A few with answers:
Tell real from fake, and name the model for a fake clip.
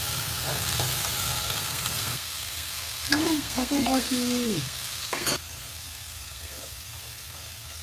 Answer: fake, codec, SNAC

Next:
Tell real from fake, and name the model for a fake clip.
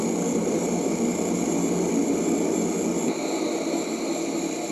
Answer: real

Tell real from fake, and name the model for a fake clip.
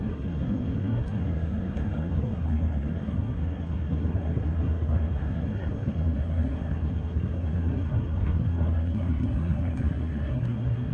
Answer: fake, codec, SNAC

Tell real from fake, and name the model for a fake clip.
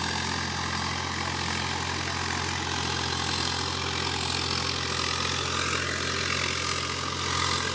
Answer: real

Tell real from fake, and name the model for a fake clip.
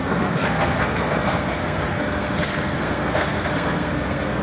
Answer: fake, codec, SNAC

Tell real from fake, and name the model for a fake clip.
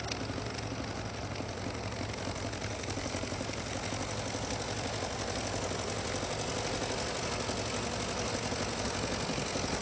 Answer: real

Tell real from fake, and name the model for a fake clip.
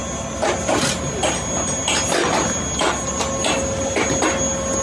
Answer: real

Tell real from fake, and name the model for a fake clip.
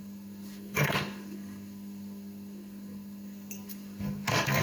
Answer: fake, codec, SNAC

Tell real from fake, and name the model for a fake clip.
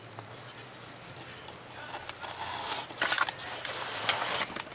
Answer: real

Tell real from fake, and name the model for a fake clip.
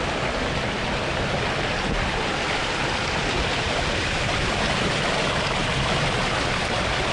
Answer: real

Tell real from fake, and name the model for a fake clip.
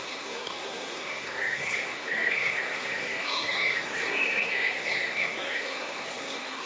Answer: fake, codec, SNAC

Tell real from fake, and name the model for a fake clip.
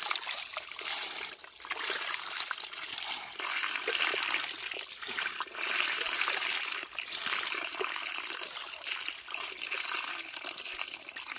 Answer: real